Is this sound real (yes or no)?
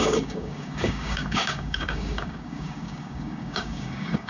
no